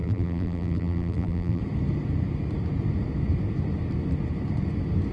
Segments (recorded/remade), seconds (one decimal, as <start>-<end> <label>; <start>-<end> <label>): 0.0-1.6 remade; 1.6-5.1 recorded